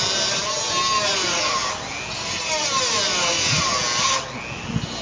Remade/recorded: recorded